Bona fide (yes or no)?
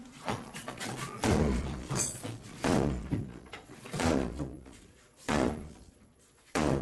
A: no